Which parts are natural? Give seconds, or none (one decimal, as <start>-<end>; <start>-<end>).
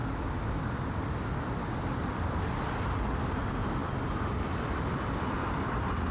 0.0-0.5